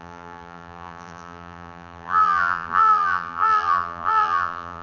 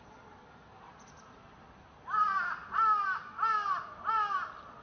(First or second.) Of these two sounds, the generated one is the first